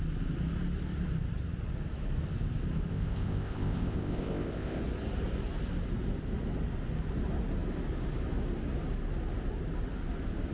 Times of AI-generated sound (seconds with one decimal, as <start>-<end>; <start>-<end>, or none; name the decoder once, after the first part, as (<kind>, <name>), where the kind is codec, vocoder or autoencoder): 2.9-4.8 (codec, ZipCodec)

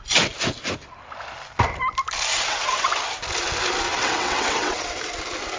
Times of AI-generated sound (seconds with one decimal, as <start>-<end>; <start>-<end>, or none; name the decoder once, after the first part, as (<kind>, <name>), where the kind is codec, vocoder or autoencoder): 2.3-2.9 (vocoder, WaveNeXt); 3.9-4.9

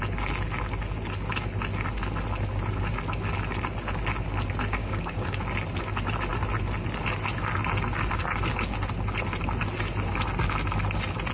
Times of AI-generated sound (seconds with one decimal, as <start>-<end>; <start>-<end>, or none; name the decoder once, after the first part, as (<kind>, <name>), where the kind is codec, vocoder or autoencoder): 4.8-5.4 (codec, DAC)